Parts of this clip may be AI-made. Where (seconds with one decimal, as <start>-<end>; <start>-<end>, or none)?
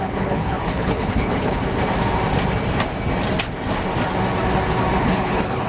0.0-1.6; 5.0-5.7